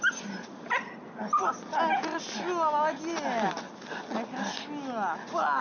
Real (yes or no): yes